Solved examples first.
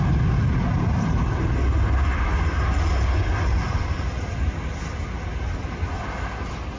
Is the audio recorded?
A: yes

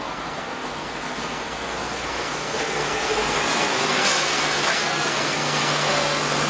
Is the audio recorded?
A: no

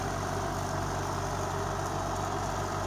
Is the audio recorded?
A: yes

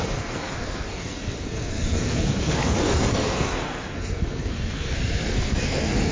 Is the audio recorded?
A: no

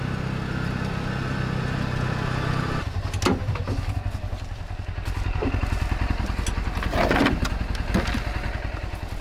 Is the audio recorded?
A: yes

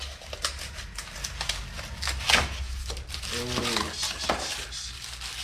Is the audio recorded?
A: yes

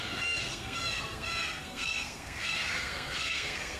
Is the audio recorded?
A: no